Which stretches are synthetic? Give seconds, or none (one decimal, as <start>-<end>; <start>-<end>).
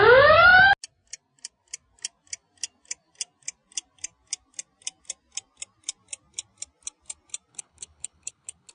7.5-8.7